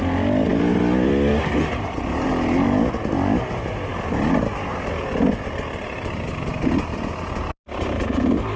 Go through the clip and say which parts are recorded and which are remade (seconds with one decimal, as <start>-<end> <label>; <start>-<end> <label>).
0.0-8.6 recorded